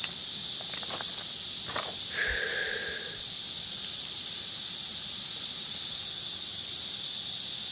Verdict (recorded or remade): recorded